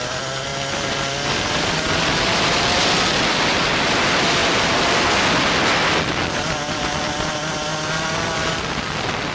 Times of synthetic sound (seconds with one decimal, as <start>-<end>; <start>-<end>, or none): 0.5-2.8